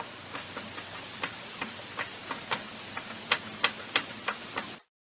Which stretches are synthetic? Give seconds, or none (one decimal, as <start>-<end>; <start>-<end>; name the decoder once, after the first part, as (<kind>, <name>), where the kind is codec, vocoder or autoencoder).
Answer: none